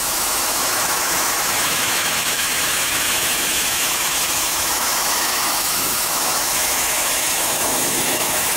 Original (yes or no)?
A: no